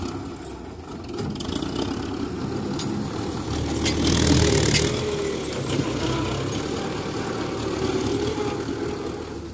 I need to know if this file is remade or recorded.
recorded